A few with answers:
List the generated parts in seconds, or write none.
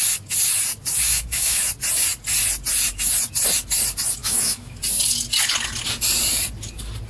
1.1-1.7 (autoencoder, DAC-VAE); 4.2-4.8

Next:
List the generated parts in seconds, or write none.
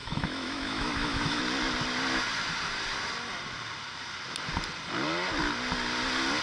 0.0-1.4 (autoencoder, DAC-VAE)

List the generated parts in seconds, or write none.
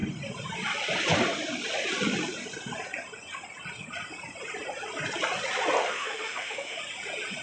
5.8-6.8 (autoencoder, DAC-VAE)